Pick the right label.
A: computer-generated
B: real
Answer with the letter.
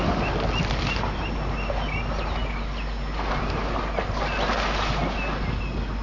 B